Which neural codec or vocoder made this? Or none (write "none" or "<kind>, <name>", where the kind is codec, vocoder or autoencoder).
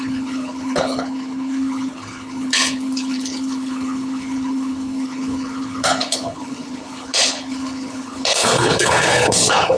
codec, HILCodec